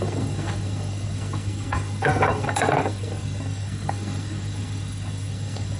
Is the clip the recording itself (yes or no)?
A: no